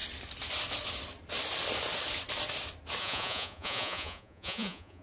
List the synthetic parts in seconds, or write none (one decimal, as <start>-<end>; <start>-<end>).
3.0-5.0